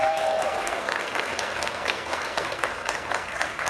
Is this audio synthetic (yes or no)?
yes